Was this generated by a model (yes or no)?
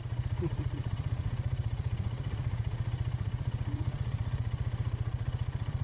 yes